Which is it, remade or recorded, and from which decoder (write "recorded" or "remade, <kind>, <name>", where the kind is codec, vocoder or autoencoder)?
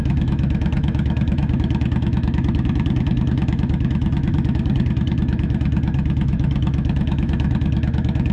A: remade, autoencoder, DAC-VAE